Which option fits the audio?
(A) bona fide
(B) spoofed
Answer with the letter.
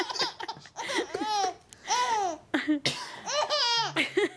A